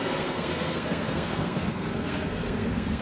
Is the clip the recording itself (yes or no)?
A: no